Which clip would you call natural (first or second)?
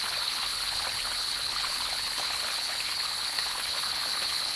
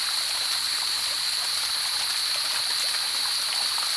second